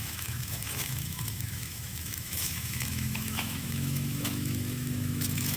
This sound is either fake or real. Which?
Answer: fake